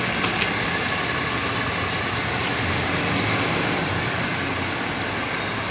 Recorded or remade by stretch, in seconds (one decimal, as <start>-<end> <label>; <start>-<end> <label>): 0.0-5.7 recorded